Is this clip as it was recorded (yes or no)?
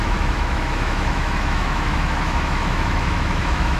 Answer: no